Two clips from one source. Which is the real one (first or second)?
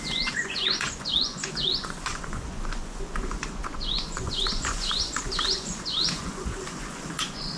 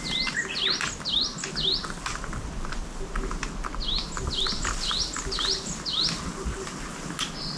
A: second